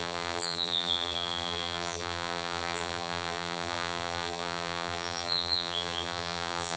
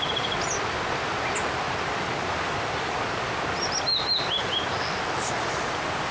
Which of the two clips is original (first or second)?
second